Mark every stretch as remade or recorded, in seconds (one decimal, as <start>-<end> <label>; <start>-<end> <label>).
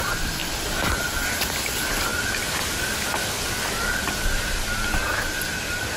0.0-6.0 recorded